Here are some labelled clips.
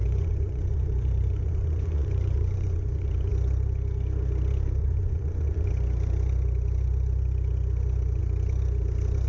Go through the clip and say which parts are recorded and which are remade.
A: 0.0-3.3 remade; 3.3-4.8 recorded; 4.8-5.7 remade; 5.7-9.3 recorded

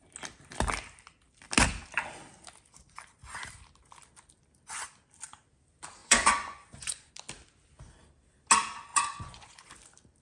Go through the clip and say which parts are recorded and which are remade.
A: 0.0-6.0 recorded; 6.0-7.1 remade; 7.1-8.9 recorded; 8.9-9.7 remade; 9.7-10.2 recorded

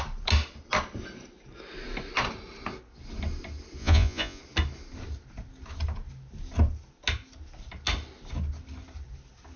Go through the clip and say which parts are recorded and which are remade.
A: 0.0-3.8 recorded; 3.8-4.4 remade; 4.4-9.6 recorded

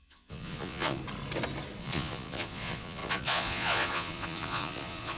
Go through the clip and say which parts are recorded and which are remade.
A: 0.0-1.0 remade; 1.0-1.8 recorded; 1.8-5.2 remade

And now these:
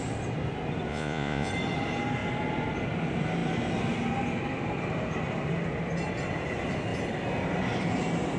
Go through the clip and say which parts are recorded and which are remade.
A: 0.0-0.9 recorded; 0.9-1.5 remade; 1.5-8.4 recorded

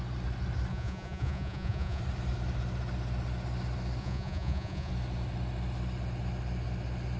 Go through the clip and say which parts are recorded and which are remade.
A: 0.0-0.7 recorded; 0.7-2.0 remade; 2.0-4.0 recorded; 4.0-4.9 remade; 4.9-7.2 recorded